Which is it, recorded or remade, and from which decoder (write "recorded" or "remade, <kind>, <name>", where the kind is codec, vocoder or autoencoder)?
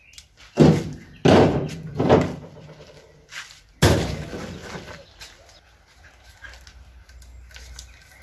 recorded